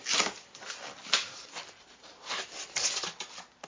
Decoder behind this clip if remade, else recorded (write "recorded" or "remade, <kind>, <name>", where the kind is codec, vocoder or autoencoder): recorded